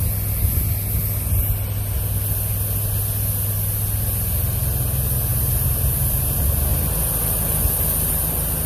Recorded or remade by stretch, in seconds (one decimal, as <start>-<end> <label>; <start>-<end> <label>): 0.0-5.3 recorded; 5.3-6.2 remade; 6.2-8.7 recorded